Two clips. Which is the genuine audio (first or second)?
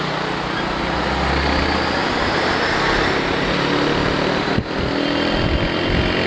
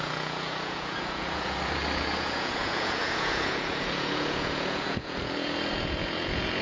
first